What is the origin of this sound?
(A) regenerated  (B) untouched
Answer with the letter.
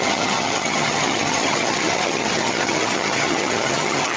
A